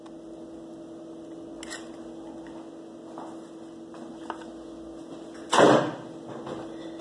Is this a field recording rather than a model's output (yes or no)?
yes